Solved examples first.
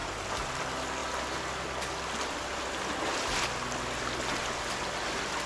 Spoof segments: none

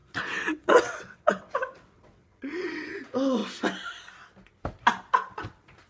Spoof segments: 0.0-2.9 (vocoder, WaveNeXt)